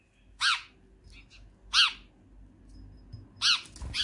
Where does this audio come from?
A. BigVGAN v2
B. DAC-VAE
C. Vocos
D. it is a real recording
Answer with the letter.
D